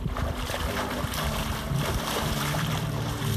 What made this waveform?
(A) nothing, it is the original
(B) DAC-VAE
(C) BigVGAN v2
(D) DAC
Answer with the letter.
C